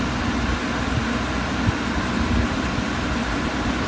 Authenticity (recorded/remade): recorded